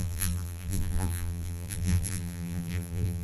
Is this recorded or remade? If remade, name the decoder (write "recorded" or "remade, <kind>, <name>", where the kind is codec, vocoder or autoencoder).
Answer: remade, vocoder, BigVGAN v2